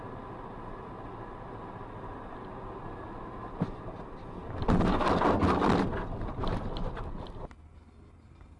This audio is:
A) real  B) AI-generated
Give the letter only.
A